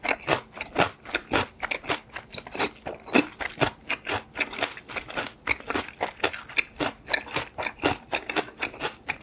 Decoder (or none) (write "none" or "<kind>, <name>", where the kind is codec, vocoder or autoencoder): none